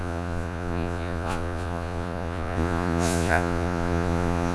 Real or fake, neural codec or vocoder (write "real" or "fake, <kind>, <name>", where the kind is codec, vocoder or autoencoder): fake, vocoder, Vocos